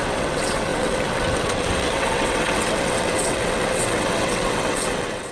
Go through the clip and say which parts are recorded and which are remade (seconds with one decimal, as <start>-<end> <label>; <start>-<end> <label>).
0.0-5.3 remade